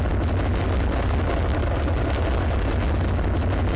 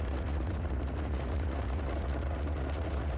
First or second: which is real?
first